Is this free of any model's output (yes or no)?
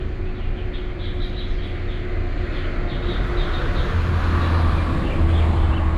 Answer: yes